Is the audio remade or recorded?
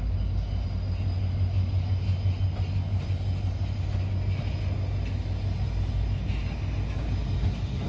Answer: recorded